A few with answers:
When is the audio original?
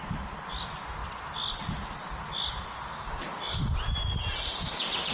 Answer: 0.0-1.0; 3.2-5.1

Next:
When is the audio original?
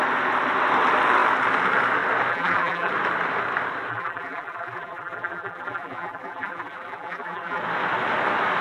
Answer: 0.0-2.3; 2.9-3.9; 7.6-8.6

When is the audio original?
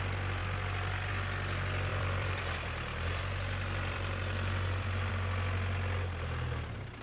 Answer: 0.0-1.9; 5.1-7.0